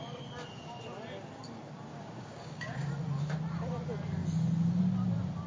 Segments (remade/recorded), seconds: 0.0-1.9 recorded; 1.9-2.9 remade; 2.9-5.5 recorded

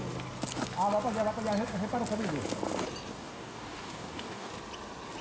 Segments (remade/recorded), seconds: 0.0-3.1 recorded; 3.1-4.5 remade; 4.5-5.2 recorded

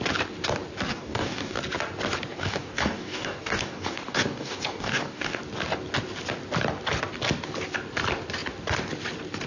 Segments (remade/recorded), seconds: 0.0-0.9 recorded; 0.9-1.6 remade; 1.6-2.3 recorded; 2.3-5.4 remade; 5.4-9.5 recorded

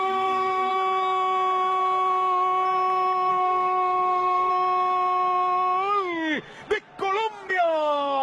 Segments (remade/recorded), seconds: 0.0-0.7 remade; 0.7-3.3 recorded; 3.3-4.5 remade; 4.5-7.5 recorded; 7.5-8.2 remade

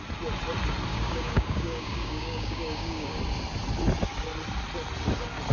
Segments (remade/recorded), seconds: 0.0-0.9 recorded; 0.9-3.2 remade; 3.2-5.5 recorded

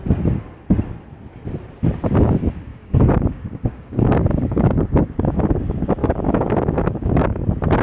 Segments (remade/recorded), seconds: 0.0-2.7 recorded; 2.7-5.4 remade; 5.4-6.0 recorded; 6.0-7.2 remade; 7.2-7.8 recorded

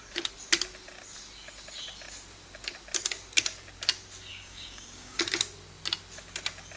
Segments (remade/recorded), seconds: 0.0-4.3 recorded; 4.3-5.2 remade; 5.2-6.8 recorded